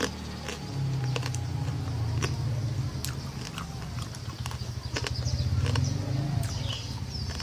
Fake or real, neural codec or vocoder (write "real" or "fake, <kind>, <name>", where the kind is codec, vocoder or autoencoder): real